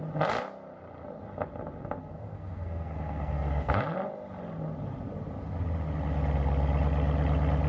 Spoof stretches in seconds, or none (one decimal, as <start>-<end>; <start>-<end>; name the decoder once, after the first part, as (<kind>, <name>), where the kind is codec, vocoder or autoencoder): 2.0-3.8 (codec, SNAC)